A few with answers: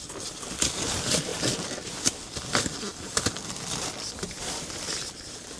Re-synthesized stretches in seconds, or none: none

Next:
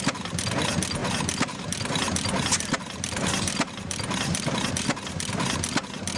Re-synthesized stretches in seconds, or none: none

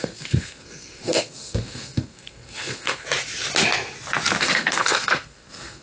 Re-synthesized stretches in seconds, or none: 0.0-3.1 (codec, SNAC); 4.4-5.8

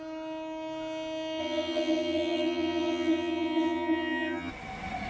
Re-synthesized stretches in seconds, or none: 1.4-4.5 (vocoder, HiFi-GAN)